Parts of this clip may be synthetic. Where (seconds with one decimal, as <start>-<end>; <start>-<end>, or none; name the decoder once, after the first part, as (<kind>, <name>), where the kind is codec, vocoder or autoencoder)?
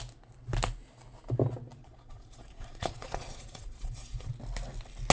1.8-4.3 (vocoder, Vocos)